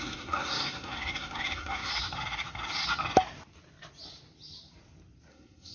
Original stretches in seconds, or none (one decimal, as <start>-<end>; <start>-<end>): 1.9-5.3